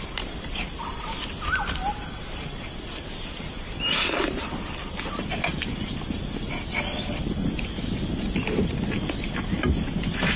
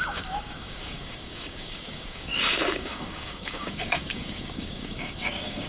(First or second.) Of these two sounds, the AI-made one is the second